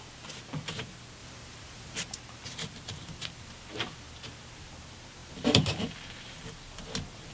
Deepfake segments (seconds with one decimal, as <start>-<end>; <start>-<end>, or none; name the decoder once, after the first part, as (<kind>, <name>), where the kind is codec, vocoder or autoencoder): 1.2-2.0 (vocoder, BigVGAN v2); 5.2-6.6